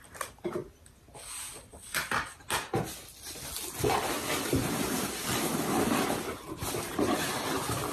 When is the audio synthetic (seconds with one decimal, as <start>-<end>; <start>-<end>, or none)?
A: 0.0-0.6; 4.3-7.9